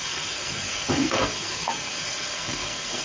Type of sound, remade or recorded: remade